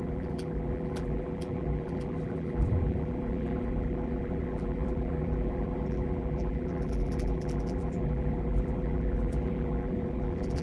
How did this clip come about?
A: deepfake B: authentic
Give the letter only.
A